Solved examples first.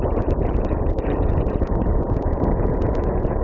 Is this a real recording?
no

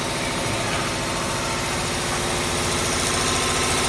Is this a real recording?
yes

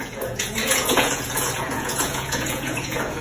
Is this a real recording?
no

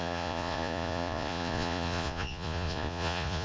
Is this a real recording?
no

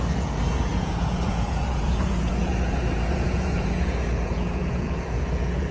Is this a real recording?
no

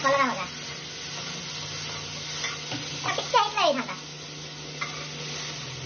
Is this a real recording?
yes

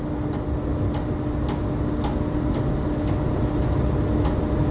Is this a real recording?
yes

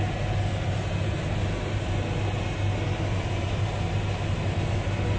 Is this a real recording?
yes